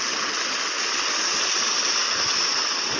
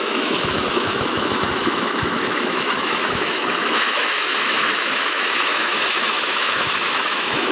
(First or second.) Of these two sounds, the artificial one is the second